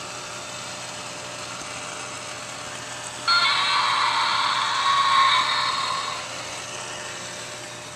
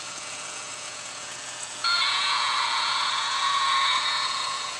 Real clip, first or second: first